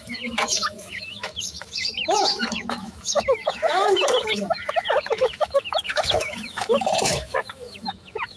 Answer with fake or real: fake